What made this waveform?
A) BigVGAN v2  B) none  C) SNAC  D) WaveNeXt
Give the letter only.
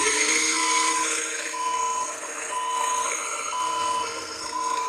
C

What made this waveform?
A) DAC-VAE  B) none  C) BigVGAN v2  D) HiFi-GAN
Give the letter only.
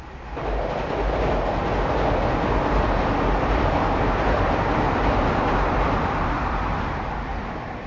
B